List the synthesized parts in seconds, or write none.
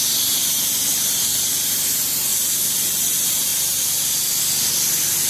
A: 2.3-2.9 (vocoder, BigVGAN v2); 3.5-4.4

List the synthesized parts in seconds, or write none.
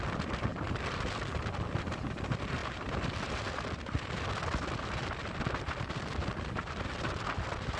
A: 0.0-0.5 (vocoder, BigVGAN v2); 1.7-7.8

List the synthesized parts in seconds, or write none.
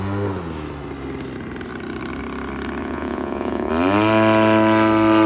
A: 2.8-3.7 (vocoder, Vocos)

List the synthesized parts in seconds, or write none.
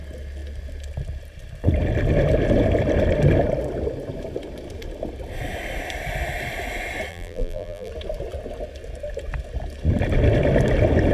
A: 7.1-7.9 (vocoder, BigVGAN v2)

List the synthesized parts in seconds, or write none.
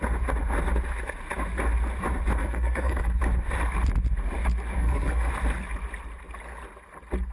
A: 2.4-3.2 (codec, SNAC); 4.8-5.3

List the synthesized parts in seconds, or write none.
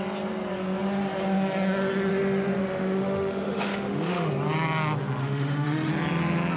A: 2.6-4.3 (autoencoder, DAC-VAE); 5.2-5.9